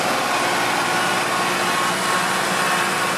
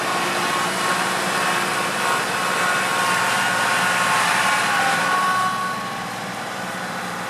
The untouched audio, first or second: first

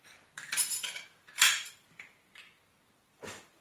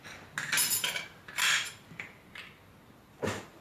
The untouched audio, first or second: second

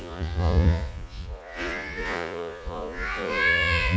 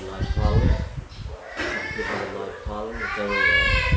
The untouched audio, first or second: second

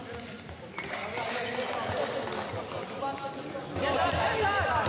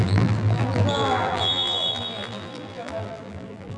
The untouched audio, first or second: first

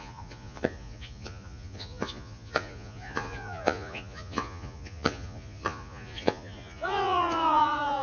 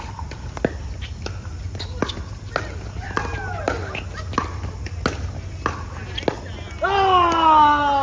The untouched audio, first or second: second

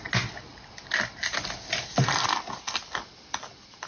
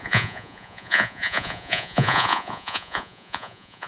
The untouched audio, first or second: first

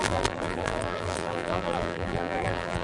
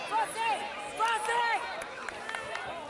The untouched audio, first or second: second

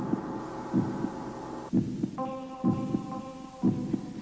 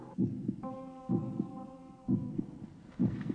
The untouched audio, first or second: first